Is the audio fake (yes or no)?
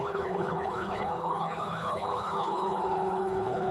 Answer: yes